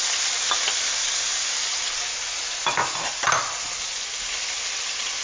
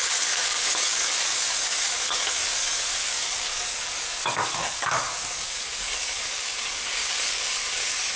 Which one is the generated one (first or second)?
second